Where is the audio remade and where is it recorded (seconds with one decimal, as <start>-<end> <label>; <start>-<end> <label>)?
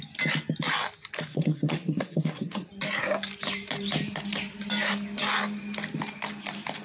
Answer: 0.0-1.3 recorded; 1.3-2.7 remade; 2.7-6.8 recorded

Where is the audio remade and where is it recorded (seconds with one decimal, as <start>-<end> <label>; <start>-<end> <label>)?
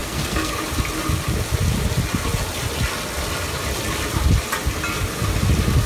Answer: 0.0-0.6 remade; 0.6-5.9 recorded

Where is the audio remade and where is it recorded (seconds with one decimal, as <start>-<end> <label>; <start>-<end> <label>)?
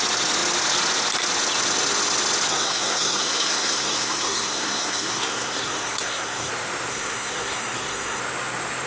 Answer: 0.0-2.5 recorded; 2.5-6.5 remade; 6.5-6.9 recorded; 6.9-8.2 remade; 8.2-8.9 recorded